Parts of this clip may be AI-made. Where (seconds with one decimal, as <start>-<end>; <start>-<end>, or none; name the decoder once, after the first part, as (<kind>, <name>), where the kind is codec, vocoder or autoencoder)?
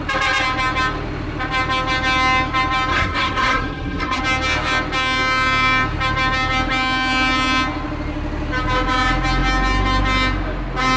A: 2.9-4.2 (codec, SNAC)